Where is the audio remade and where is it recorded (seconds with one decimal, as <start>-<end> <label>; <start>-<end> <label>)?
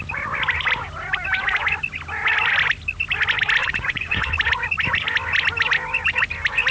0.0-3.6 recorded; 3.6-4.3 remade; 4.3-6.7 recorded